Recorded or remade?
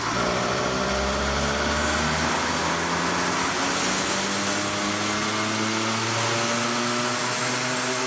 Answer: recorded